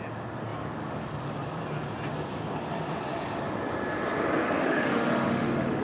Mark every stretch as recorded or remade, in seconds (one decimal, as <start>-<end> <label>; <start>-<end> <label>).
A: 0.0-4.6 recorded; 4.6-5.8 remade